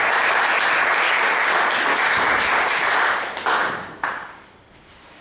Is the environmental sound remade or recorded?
recorded